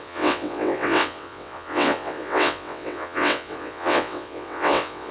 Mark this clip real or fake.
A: fake